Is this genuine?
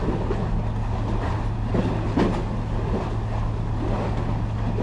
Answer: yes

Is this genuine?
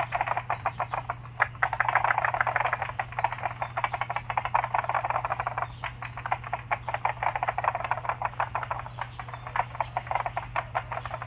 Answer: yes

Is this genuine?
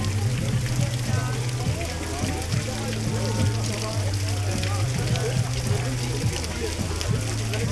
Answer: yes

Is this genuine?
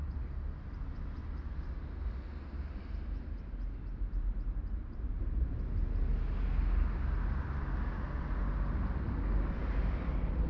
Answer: yes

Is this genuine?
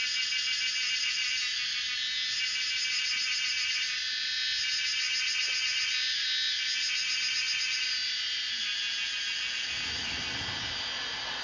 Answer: yes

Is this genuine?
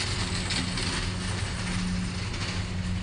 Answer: yes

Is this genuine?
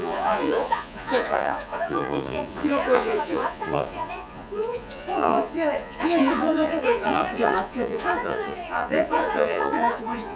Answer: no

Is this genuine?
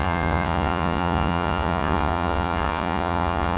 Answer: no